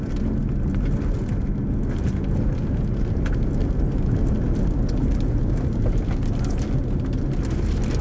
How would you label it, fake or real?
real